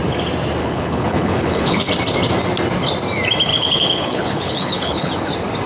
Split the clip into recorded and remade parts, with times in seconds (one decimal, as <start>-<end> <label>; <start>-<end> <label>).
0.0-0.6 recorded; 0.6-1.9 remade; 1.9-3.5 recorded; 3.5-5.1 remade; 5.1-5.7 recorded